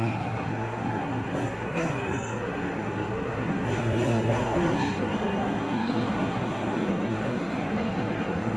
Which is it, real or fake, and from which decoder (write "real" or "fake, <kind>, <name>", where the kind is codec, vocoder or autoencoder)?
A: fake, codec, SNAC